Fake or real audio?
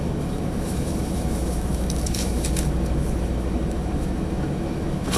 fake